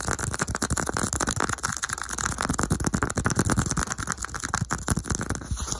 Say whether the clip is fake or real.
real